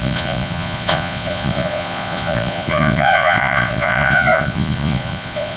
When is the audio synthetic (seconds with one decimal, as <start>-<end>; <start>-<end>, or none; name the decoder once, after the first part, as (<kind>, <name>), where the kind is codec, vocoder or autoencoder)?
0.0-5.6 (vocoder, Vocos)